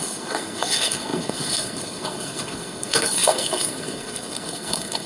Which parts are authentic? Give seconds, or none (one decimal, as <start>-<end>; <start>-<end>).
none